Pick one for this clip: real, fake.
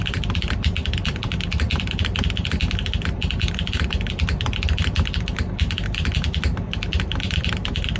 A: fake